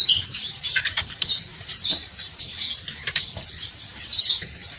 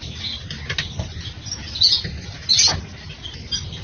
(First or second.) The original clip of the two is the second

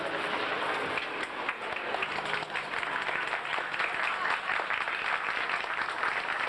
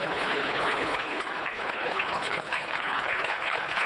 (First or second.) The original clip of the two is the first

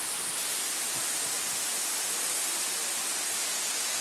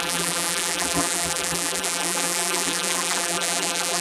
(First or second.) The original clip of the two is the first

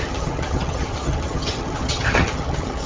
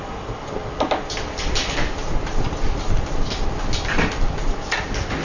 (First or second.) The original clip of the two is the second